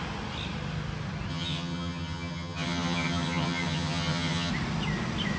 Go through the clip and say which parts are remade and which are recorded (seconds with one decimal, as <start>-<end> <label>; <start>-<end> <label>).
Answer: 0.0-1.3 recorded; 1.3-4.5 remade; 4.5-5.4 recorded